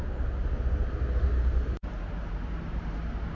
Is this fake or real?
real